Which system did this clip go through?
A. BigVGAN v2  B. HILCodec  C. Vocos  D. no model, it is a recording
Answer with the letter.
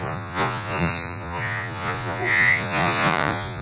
C